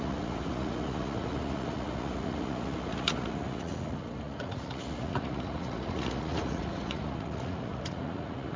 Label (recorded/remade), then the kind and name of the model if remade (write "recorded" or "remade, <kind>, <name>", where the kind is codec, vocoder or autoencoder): remade, vocoder, Vocos